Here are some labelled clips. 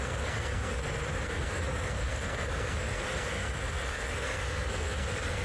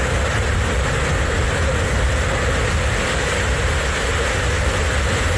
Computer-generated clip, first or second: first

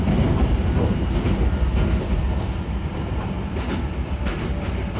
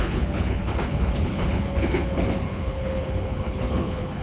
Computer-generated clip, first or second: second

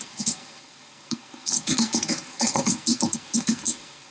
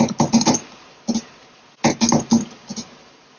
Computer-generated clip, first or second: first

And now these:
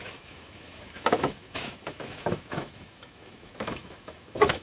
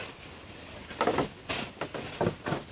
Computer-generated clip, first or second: first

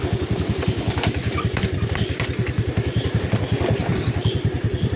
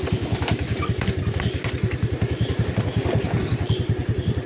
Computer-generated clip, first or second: first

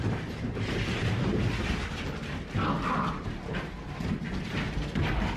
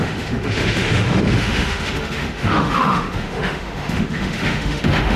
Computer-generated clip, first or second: second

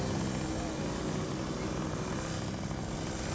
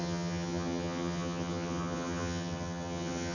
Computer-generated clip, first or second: second